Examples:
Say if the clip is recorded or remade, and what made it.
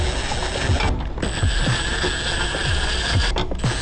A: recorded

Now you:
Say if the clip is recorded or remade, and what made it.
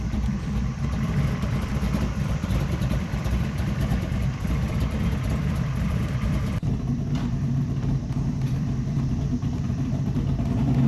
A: remade, vocoder, BigVGAN v2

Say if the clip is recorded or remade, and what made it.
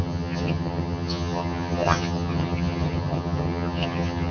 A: remade, vocoder, HiFi-GAN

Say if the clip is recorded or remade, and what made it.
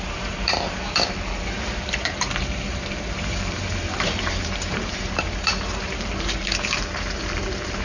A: remade, vocoder, BigVGAN v2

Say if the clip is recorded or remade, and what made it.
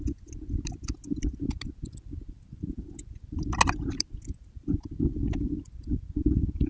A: recorded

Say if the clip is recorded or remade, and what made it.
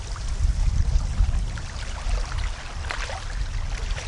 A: recorded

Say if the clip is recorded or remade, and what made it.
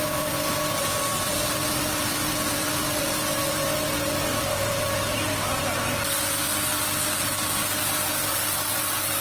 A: recorded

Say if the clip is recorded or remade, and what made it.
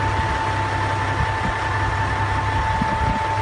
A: recorded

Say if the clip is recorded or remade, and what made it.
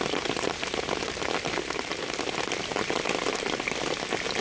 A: recorded